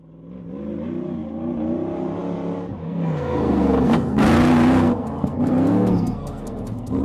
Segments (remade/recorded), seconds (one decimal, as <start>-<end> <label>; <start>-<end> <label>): 0.0-2.8 recorded; 2.8-7.0 remade